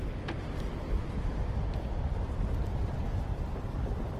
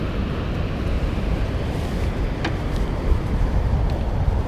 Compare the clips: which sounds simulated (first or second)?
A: second